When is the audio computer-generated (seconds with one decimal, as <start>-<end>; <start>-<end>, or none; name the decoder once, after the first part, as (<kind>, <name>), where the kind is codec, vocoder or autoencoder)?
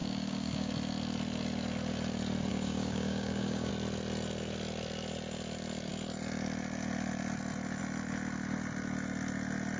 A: 0.0-0.7 (codec, DAC); 2.5-3.7